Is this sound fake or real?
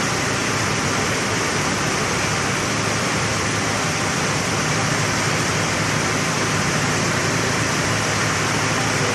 fake